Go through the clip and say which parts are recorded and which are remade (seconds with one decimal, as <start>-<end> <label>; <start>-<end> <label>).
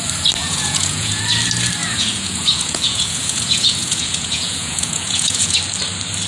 0.0-0.4 recorded; 0.4-1.2 remade; 1.2-1.8 recorded; 1.8-5.6 remade; 5.6-6.3 recorded